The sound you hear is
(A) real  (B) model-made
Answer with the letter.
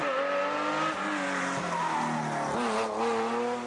A